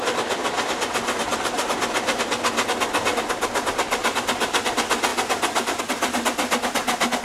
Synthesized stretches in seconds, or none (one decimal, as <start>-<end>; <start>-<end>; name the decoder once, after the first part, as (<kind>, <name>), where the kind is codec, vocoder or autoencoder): none

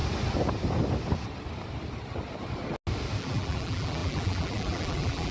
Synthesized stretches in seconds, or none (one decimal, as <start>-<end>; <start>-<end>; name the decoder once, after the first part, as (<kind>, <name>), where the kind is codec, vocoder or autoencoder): 3.2-5.3 (vocoder, BigVGAN v2)

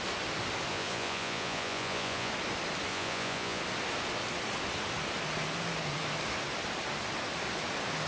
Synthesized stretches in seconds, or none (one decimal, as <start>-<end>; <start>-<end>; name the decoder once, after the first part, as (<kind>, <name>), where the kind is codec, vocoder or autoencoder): 0.7-2.3 (vocoder, Vocos); 2.9-3.6